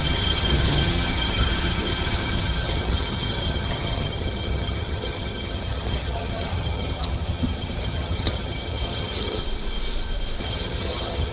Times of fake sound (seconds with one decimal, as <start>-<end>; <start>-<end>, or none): 0.0-9.4; 10.4-11.3